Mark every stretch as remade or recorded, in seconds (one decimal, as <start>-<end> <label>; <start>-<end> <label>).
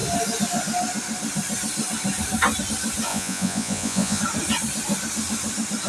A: 0.0-3.1 recorded; 3.1-4.2 remade; 4.2-5.9 recorded